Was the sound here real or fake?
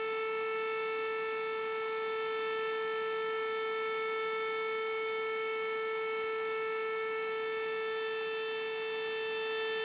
real